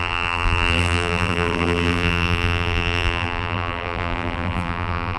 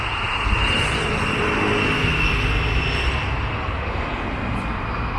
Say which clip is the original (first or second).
second